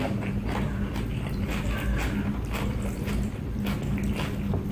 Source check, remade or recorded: recorded